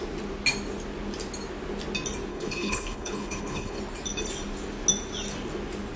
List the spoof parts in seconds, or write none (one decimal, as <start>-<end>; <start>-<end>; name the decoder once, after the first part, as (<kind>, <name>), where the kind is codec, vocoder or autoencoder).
2.3-3.8 (codec, HILCodec)